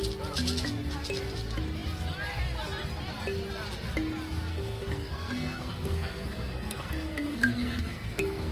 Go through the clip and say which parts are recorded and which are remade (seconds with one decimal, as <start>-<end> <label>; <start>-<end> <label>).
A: 0.0-4.5 recorded; 4.5-8.5 remade

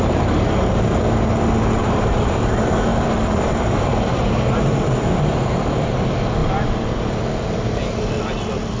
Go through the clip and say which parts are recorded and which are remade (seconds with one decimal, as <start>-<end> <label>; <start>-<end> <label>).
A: 0.0-1.8 recorded; 1.8-2.3 remade; 2.3-2.9 recorded; 2.9-4.6 remade; 4.6-8.8 recorded

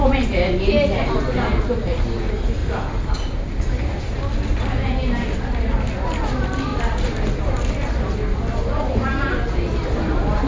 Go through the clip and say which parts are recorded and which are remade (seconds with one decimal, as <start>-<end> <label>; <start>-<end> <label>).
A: 0.0-10.5 recorded

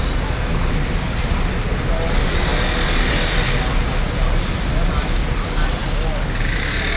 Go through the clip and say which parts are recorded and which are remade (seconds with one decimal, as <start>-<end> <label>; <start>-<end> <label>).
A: 0.0-7.0 recorded

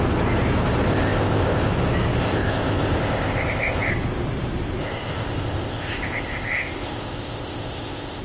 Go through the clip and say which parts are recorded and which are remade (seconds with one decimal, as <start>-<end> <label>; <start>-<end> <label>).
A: 0.0-0.9 recorded; 0.9-1.7 remade; 1.7-2.2 recorded; 2.2-3.9 remade; 3.9-4.8 recorded; 4.8-8.2 remade